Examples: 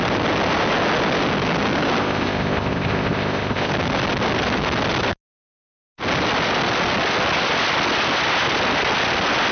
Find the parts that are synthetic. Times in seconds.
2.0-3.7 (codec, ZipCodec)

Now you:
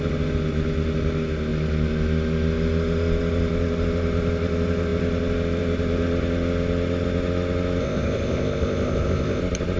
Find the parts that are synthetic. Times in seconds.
7.8-9.4 (codec, ZipCodec)

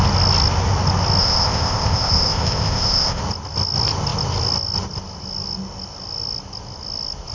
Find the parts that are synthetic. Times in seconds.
1.2-3.2 (codec, ZipCodec)

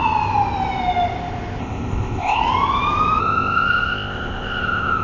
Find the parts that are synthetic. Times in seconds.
1.6-2.4 (codec, ZipCodec); 3.2-5.0

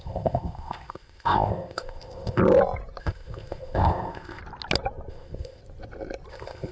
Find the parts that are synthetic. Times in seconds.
0.0-2.4 (codec, ZipCodec); 3.0-4.4; 5.1-5.6; 6.3-6.7

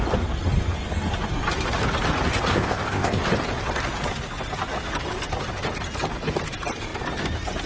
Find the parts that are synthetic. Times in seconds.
2.5-3.2 (codec, ZipCodec)

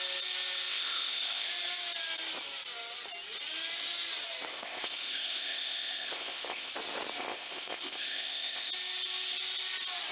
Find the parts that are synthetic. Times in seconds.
0.7-1.5 (codec, ZipCodec); 4.5-6.7; 7.2-8.7